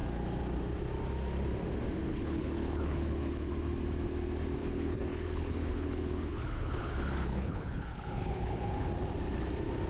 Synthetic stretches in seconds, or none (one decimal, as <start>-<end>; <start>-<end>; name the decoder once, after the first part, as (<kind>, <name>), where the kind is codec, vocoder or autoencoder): 2.0-3.5 (codec, HILCodec); 4.6-8.9